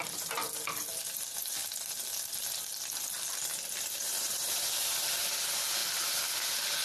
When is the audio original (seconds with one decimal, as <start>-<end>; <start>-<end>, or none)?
0.0-6.8